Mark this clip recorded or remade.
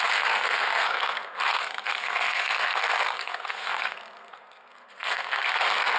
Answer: remade